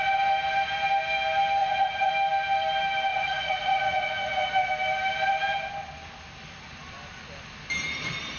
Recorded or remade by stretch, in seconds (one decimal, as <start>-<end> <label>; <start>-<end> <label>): 0.0-1.6 recorded; 1.6-2.1 remade; 2.1-3.1 recorded; 3.1-4.7 remade; 4.7-8.4 recorded